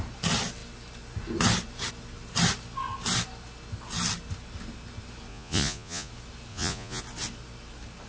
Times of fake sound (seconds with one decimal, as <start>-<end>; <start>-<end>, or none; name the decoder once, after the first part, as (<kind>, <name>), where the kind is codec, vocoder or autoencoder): 5.3-6.1 (vocoder, Vocos); 6.5-7.0